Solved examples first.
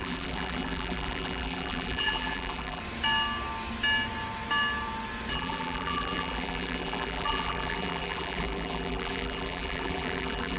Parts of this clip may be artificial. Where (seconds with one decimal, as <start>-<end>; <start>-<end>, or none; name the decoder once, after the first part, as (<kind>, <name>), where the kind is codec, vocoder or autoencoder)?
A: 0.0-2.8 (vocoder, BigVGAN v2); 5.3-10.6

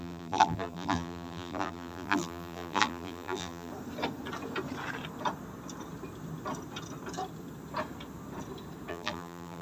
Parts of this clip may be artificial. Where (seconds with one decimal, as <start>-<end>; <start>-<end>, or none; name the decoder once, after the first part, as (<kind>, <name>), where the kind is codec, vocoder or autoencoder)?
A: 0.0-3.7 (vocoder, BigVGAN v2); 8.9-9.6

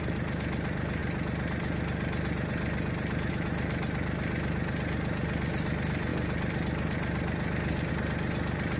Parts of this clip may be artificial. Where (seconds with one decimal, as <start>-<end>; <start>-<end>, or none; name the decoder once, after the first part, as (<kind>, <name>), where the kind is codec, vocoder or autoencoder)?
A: none